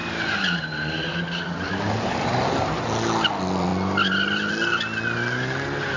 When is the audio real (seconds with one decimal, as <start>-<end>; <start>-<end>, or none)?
0.0-6.0